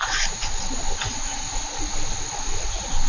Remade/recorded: recorded